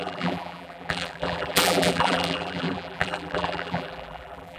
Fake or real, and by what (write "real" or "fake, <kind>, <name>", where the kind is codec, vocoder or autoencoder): fake, vocoder, BigVGAN v2